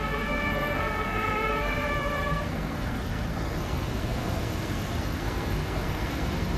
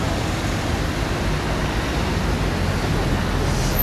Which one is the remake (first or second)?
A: first